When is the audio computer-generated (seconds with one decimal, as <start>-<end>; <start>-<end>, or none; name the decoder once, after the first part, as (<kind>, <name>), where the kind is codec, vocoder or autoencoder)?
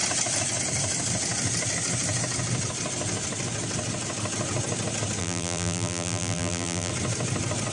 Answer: 5.2-6.9 (vocoder, BigVGAN v2)